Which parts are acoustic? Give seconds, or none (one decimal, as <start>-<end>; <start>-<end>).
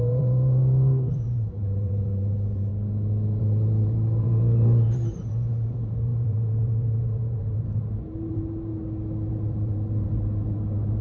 2.7-3.4; 8.7-9.3